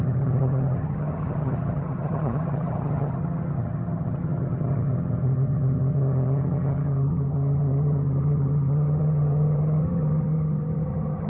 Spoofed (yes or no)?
yes